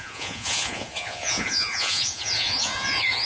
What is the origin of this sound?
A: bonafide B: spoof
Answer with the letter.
B